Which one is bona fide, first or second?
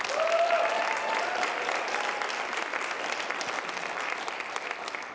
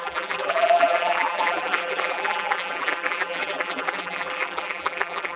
first